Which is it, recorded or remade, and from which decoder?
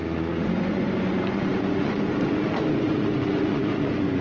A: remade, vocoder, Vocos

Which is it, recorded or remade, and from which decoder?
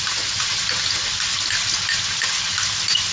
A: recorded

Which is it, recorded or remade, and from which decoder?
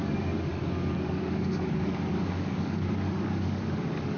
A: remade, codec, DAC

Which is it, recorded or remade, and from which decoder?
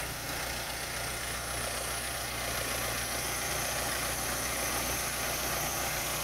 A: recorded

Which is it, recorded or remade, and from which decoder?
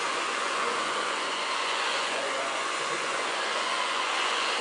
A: remade, vocoder, Vocos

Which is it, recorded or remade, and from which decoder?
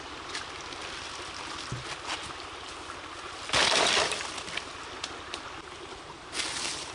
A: recorded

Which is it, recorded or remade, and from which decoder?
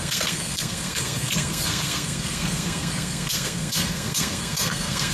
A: remade, codec, SNAC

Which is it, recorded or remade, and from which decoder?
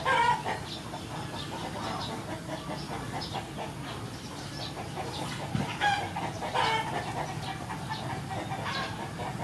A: recorded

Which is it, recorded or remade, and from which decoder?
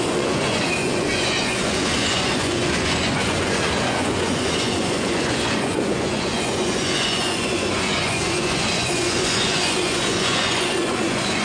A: remade, vocoder, Vocos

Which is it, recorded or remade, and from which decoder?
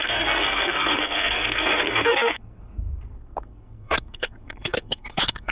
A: remade, codec, SNAC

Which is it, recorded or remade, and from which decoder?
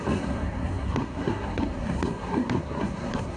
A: remade, codec, SNAC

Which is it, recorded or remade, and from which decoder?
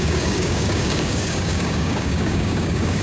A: remade, codec, DAC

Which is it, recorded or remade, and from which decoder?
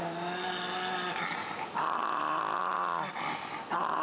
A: recorded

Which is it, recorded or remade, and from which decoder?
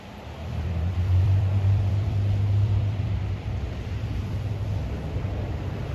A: remade, vocoder, BigVGAN v2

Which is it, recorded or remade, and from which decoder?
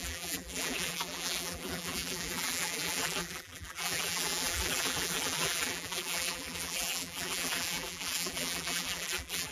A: remade, vocoder, BigVGAN v2